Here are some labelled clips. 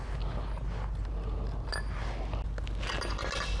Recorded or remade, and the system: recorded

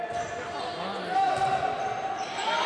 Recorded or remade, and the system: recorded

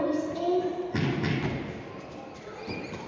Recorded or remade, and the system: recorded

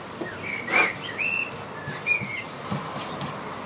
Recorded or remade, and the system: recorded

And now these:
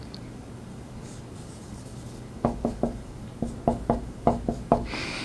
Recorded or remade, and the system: remade, codec, DAC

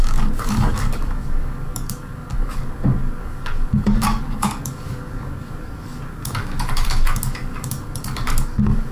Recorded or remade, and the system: remade, codec, DAC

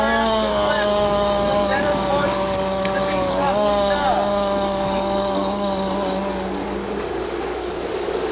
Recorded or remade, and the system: remade, codec, DAC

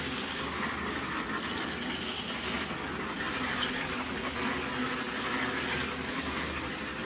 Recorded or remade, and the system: recorded